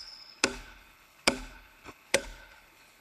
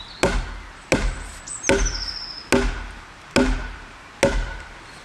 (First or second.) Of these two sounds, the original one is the second